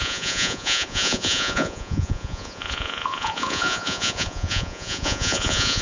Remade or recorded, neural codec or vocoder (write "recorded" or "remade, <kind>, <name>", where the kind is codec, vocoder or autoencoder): remade, vocoder, Vocos